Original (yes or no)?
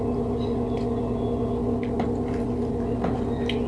yes